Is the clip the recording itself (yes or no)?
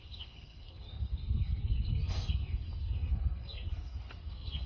no